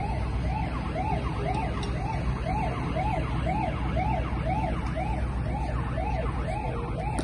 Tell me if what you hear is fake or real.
real